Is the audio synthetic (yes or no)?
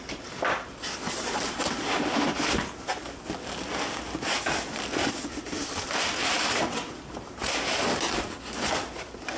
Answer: no